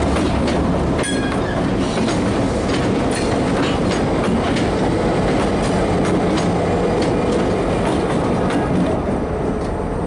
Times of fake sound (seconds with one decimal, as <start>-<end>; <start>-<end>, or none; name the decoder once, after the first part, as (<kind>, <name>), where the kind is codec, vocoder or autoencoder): none

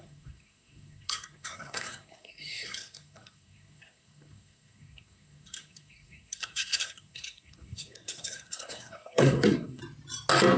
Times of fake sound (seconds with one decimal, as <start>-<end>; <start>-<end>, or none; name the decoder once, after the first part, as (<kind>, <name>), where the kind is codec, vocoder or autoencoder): 0.0-9.8 (codec, SNAC)